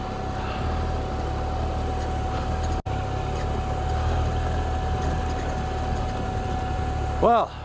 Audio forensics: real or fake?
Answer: real